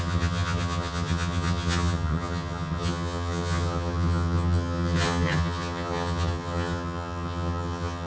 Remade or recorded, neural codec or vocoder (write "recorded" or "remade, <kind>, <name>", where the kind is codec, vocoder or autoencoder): remade, vocoder, HiFi-GAN